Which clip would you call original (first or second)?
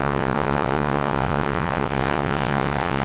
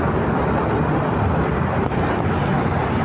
second